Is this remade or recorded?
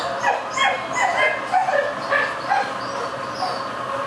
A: recorded